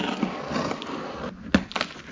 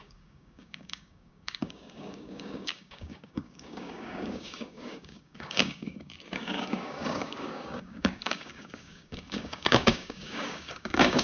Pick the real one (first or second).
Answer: first